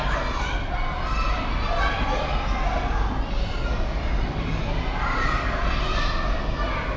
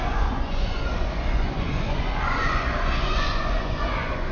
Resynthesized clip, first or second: second